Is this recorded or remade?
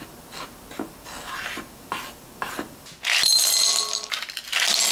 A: recorded